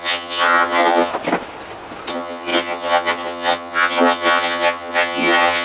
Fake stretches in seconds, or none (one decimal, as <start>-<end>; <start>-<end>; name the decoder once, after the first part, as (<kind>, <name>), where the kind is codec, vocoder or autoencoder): 0.0-1.1 (vocoder, HiFi-GAN); 2.1-5.6